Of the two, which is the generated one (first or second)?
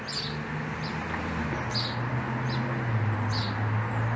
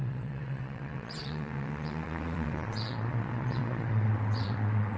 second